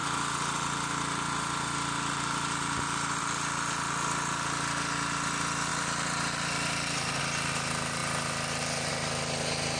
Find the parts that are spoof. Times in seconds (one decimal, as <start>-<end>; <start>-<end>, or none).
5.7-7.2